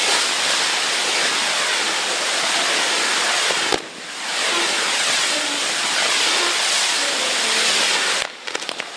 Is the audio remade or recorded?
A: recorded